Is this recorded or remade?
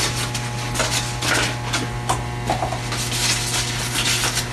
recorded